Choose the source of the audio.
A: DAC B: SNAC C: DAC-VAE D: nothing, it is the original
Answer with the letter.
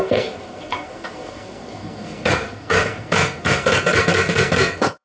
B